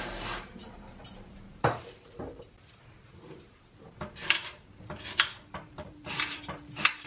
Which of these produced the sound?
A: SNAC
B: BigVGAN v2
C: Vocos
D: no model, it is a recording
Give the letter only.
B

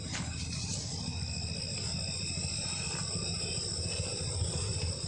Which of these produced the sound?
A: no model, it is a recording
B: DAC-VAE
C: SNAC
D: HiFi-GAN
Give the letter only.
A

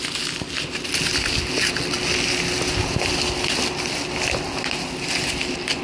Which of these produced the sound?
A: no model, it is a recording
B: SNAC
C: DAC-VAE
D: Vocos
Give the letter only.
A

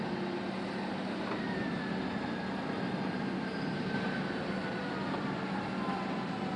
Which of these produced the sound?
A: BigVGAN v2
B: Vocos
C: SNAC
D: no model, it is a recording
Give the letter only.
D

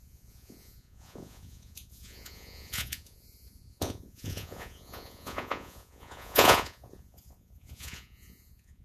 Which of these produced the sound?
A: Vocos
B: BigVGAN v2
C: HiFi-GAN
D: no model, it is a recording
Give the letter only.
A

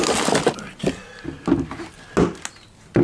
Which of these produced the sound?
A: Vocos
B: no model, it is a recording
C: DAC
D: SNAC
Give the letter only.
B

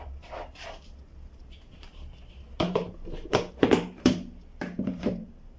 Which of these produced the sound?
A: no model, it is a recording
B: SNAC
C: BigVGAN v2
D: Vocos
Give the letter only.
C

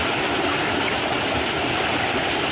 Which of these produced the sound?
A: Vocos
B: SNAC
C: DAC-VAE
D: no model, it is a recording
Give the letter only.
D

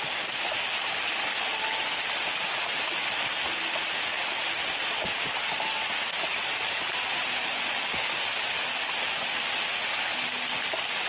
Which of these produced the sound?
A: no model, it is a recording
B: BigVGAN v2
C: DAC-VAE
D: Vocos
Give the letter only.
A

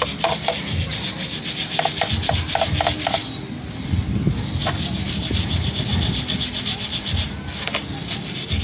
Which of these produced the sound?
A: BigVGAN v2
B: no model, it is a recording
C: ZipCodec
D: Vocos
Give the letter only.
B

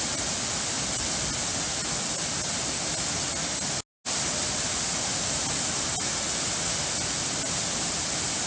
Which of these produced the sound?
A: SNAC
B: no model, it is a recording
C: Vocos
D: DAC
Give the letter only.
B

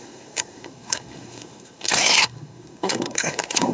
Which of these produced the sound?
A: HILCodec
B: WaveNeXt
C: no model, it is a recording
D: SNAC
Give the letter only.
D